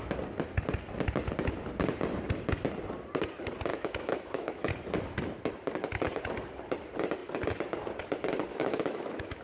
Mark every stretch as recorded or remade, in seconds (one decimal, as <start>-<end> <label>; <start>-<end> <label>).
0.0-3.7 recorded; 3.7-4.7 remade; 4.7-8.5 recorded; 8.5-9.4 remade